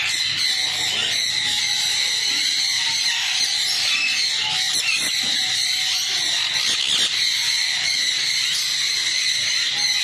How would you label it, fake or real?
real